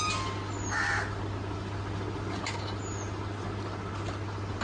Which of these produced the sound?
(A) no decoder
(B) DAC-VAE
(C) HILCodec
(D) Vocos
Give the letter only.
A